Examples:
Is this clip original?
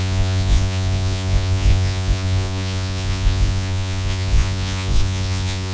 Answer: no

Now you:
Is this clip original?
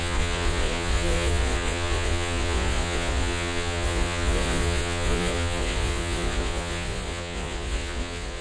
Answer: no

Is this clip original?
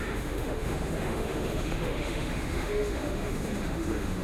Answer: no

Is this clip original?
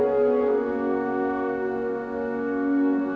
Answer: yes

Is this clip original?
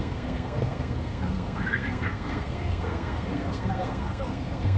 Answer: no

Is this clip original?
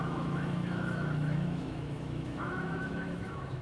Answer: no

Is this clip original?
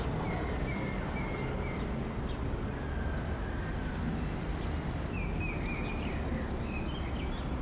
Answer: yes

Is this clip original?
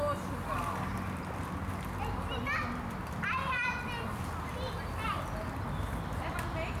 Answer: yes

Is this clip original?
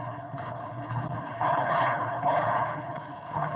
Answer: no